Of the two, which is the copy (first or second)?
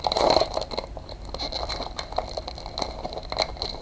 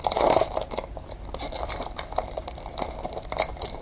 second